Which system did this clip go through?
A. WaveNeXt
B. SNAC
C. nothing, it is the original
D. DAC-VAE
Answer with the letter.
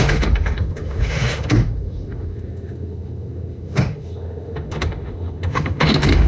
D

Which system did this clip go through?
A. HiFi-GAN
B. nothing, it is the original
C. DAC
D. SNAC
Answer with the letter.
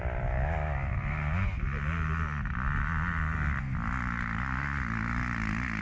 B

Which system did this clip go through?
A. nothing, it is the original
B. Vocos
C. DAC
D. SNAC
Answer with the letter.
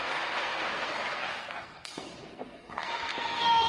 D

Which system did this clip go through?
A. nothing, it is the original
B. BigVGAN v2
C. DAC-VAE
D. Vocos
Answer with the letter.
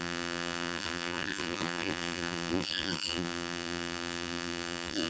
B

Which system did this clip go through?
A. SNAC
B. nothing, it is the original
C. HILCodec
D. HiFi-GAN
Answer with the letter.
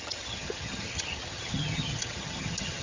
D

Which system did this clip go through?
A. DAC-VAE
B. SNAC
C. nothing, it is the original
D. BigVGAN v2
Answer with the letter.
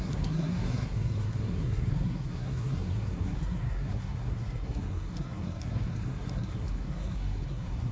B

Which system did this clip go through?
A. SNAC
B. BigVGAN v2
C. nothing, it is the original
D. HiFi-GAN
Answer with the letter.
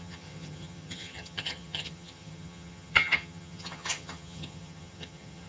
D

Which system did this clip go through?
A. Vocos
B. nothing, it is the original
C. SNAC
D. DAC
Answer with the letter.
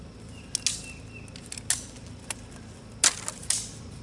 B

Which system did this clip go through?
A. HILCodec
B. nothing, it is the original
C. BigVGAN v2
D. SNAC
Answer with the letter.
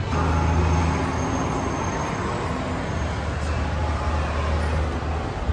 B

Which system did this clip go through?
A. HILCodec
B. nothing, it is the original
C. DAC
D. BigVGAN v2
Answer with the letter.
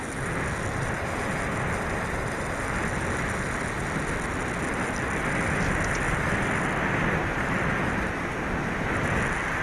B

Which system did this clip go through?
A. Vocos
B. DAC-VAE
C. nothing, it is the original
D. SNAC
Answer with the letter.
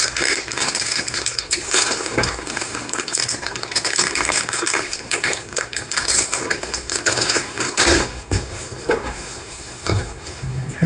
D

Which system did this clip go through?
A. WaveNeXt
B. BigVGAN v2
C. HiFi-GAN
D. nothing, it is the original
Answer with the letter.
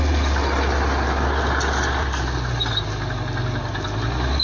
D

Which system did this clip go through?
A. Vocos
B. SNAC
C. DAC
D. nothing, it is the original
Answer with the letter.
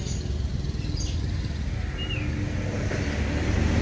D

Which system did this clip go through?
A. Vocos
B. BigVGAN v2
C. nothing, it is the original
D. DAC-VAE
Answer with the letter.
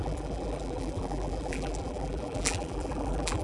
B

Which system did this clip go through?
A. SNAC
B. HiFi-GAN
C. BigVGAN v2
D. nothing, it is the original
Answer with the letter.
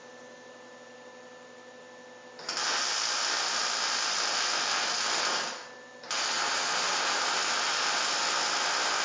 D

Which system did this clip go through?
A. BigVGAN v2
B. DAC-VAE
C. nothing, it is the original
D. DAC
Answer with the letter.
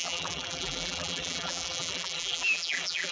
A